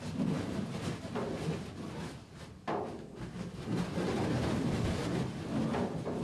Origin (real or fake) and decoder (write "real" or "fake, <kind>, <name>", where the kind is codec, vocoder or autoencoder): real